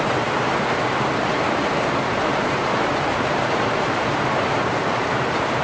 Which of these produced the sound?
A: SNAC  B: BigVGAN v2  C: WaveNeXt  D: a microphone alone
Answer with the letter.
B